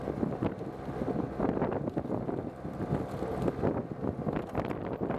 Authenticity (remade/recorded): recorded